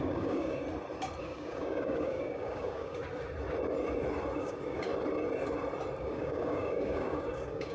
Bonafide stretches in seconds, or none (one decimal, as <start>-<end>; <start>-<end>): 0.6-1.2; 3.0-4.4; 4.9-6.0